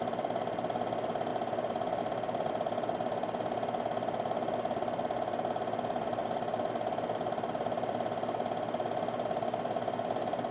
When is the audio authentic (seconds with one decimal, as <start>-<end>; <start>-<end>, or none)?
0.0-1.3; 2.0-10.5